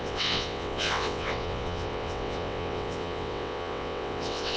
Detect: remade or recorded remade